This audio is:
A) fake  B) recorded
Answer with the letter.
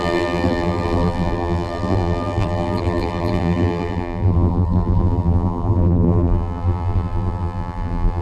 A